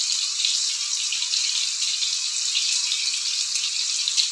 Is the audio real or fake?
real